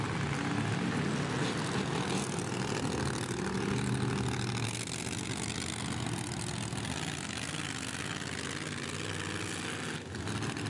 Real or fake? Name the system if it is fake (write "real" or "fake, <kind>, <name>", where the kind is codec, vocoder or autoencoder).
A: real